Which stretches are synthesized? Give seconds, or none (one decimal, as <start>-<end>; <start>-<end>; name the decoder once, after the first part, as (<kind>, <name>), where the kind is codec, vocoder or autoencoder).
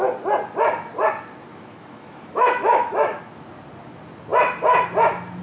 1.5-3.2 (autoencoder, DAC-VAE)